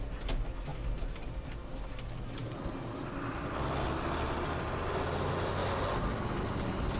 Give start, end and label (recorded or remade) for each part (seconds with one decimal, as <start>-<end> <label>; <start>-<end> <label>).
0.0-7.0 recorded